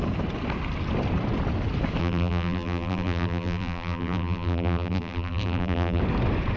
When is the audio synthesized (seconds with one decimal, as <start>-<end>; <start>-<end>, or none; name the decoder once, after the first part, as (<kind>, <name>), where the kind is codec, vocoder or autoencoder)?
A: 2.0-6.0 (vocoder, BigVGAN v2)